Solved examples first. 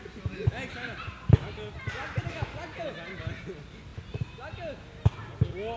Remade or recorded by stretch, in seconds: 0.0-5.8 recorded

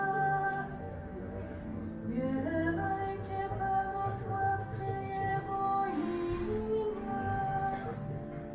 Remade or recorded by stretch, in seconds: 0.0-0.7 recorded; 0.7-1.8 remade; 1.8-4.5 recorded; 4.5-5.3 remade; 5.3-8.5 recorded

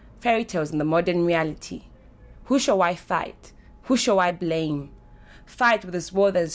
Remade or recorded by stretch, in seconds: 0.0-6.5 recorded

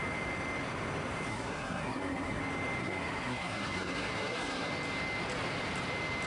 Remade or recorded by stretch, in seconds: 0.0-1.3 recorded; 1.3-2.4 remade; 2.4-2.8 recorded; 2.8-4.7 remade; 4.7-6.3 recorded

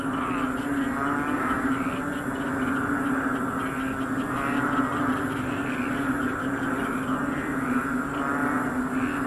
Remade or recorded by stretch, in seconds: 0.0-9.3 recorded

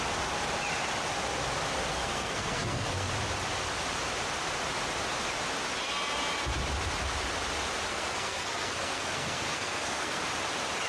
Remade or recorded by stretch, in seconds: 0.0-1.9 recorded; 1.9-3.1 remade; 3.1-7.9 recorded; 7.9-10.2 remade; 10.2-10.9 recorded

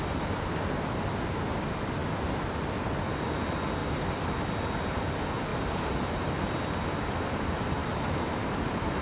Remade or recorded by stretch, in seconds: 0.0-3.8 recorded; 3.8-4.3 remade; 4.3-5.5 recorded; 5.5-6.4 remade; 6.4-7.8 recorded; 7.8-9.0 remade